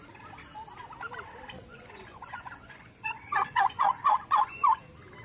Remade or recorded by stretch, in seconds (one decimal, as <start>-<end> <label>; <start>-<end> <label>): 0.0-1.7 recorded; 1.7-4.8 remade; 4.8-5.2 recorded